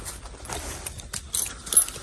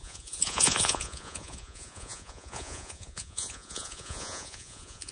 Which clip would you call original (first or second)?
first